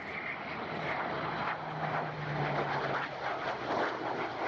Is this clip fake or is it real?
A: real